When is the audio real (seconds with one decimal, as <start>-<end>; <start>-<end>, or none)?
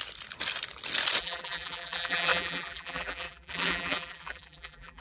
0.0-1.2